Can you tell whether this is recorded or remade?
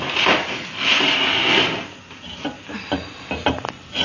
recorded